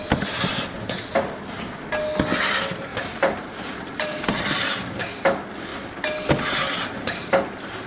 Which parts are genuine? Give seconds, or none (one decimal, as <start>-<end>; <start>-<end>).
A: 0.0-2.9; 5.0-7.9